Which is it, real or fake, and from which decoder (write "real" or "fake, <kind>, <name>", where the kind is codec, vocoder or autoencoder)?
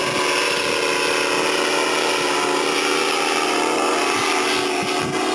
real